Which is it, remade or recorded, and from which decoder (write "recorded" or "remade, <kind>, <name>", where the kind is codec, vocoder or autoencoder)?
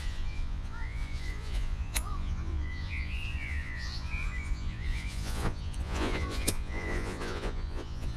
remade, vocoder, Vocos